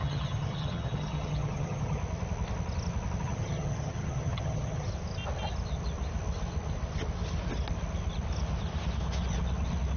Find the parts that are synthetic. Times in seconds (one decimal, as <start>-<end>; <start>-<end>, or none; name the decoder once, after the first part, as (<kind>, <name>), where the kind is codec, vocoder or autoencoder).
0.0-2.0 (vocoder, HiFi-GAN); 3.2-4.9